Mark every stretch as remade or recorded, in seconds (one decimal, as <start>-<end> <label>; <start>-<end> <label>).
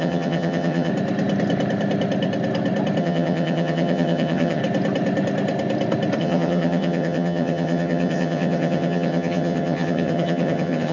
0.0-0.9 remade; 0.9-3.0 recorded; 3.0-4.6 remade; 4.6-6.2 recorded; 6.2-10.9 remade